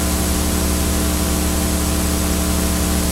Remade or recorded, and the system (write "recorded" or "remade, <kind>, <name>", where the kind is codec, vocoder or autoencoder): remade, vocoder, BigVGAN v2